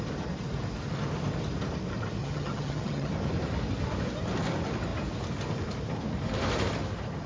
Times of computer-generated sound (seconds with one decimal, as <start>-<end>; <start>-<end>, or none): 2.2-3.1